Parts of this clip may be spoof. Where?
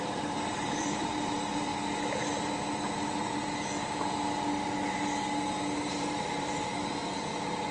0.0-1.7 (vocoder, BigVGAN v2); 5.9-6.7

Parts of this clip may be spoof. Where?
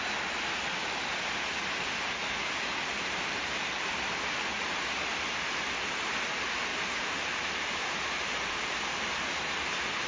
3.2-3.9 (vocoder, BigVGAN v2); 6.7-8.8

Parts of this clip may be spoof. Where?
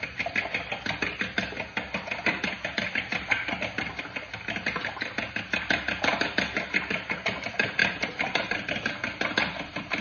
7.8-8.5 (vocoder, BigVGAN v2)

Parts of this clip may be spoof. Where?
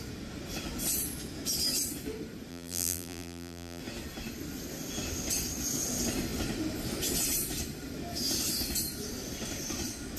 2.5-3.8 (vocoder, BigVGAN v2)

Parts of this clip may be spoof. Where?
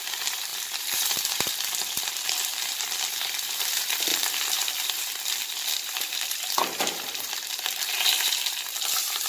0.0-9.3 (vocoder, BigVGAN v2)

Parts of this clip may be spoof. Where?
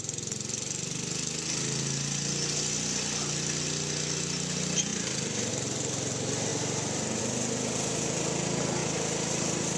4.9-5.5 (vocoder, BigVGAN v2)